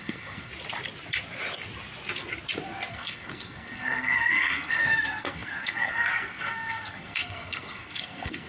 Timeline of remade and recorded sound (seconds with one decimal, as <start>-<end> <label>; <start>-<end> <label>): 0.0-0.5 remade; 0.5-2.9 recorded; 2.9-8.5 remade